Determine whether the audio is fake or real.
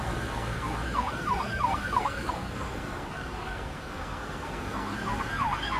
fake